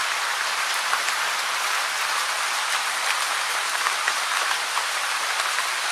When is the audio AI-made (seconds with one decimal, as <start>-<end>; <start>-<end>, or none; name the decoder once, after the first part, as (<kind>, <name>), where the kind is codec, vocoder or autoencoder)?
none